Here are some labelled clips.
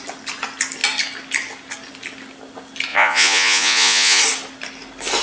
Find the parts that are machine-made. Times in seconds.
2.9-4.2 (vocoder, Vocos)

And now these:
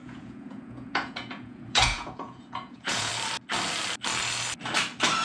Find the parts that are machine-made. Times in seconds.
0.0-3.1 (vocoder, Vocos)

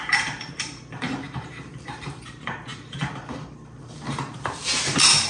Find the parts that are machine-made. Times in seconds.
0.0-5.3 (vocoder, BigVGAN v2)

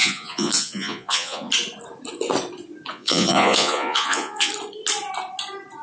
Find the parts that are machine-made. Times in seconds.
0.0-1.5 (vocoder, Vocos); 2.9-4.5

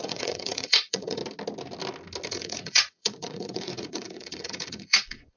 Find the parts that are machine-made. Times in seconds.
0.0-1.2 (vocoder, Vocos); 2.3-5.4

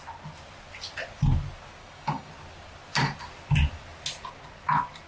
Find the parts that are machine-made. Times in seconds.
1.8-2.3 (codec, DAC)